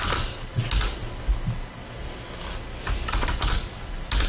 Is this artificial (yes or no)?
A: no